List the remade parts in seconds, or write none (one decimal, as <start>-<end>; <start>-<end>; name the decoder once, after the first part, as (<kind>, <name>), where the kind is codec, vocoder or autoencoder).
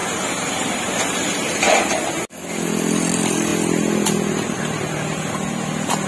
none